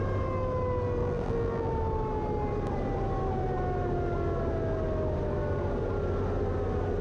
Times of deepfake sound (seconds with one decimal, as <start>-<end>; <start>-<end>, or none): 1.0-1.7